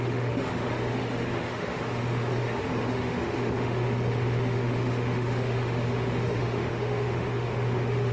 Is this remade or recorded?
remade